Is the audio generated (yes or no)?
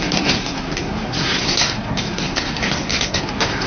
yes